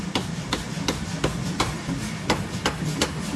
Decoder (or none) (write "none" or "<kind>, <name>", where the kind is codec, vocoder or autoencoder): none